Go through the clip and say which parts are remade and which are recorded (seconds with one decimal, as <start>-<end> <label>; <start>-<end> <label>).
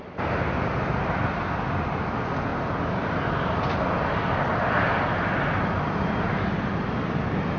0.0-7.6 recorded